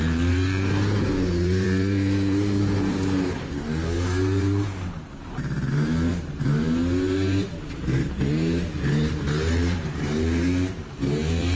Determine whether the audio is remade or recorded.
remade